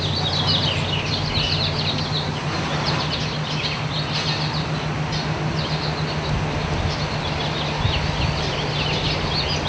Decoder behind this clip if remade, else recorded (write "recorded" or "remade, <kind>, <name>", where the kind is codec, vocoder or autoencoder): recorded